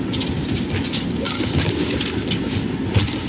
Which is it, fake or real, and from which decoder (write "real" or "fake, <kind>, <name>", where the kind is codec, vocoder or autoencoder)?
real